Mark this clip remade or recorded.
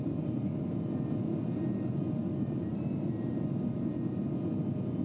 recorded